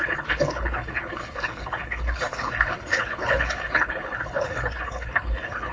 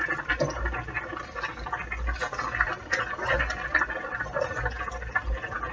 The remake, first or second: first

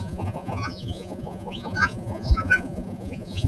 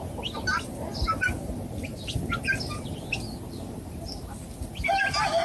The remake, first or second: first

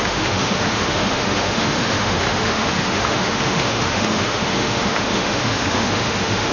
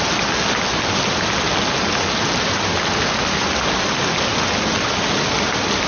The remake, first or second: first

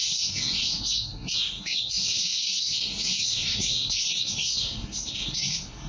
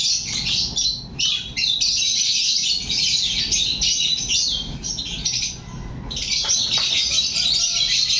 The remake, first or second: first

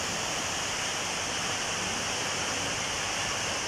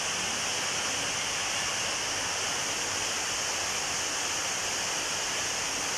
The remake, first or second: first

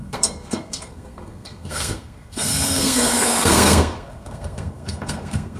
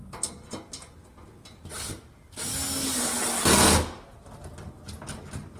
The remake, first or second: first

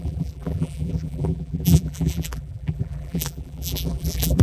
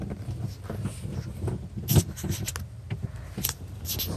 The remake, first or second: first